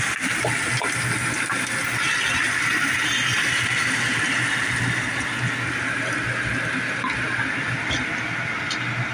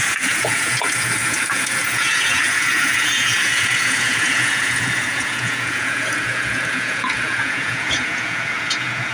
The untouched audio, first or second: first